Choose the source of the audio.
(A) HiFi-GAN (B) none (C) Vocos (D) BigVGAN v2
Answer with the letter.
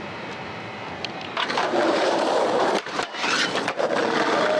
D